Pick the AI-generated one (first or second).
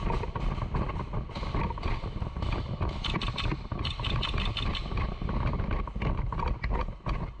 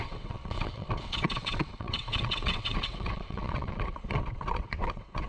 second